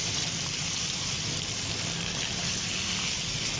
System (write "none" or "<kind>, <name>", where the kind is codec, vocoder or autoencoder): none